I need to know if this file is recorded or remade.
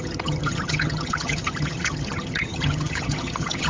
remade